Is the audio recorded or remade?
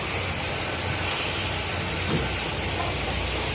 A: recorded